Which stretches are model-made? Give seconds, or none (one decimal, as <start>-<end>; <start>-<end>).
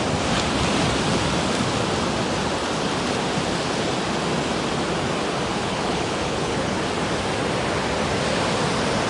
5.5-6.8